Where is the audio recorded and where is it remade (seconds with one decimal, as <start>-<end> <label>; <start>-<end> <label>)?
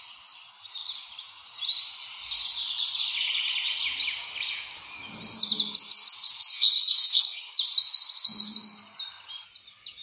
0.0-6.5 recorded; 6.5-7.5 remade; 7.5-10.0 recorded